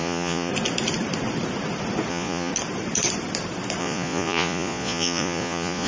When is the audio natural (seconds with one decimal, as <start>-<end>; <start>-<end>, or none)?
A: 0.5-2.1; 2.5-3.8